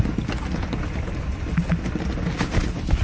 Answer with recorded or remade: recorded